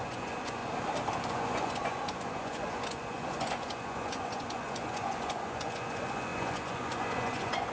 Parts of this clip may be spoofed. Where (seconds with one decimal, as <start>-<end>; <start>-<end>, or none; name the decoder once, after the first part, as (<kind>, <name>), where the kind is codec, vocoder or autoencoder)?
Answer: 0.0-0.6 (vocoder, Vocos); 1.3-7.7